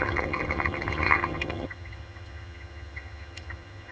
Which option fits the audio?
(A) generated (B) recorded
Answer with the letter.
A